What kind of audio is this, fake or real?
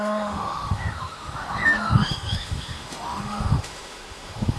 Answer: fake